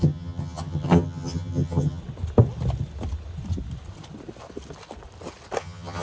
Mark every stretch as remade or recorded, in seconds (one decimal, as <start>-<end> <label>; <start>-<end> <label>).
0.0-2.0 remade; 2.0-5.6 recorded; 5.6-6.0 remade